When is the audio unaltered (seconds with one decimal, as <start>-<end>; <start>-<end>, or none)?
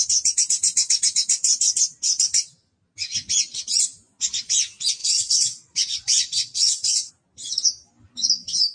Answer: 0.0-5.0; 7.1-8.7